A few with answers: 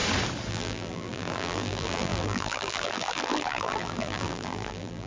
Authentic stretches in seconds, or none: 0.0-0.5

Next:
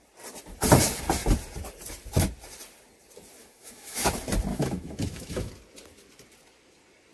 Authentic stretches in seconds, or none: 0.0-3.4; 4.1-4.5; 5.5-7.1

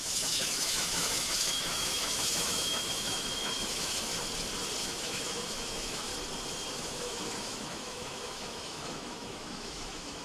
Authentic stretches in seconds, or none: 4.1-4.8; 6.1-6.7

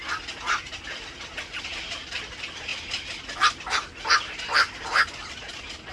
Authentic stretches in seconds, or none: 0.0-5.9

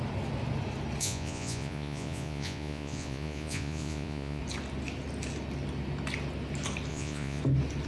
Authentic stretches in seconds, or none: 0.0-1.0; 4.4-6.9; 7.4-7.9